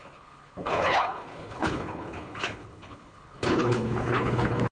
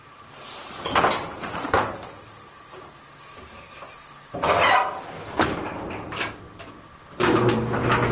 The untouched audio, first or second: second